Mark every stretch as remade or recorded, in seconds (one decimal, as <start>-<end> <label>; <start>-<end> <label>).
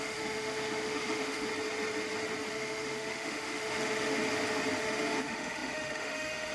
0.0-1.5 remade; 1.5-2.5 recorded; 2.5-4.2 remade; 4.2-4.8 recorded; 4.8-6.5 remade